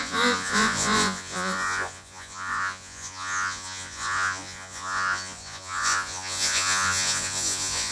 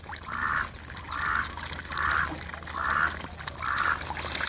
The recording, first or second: second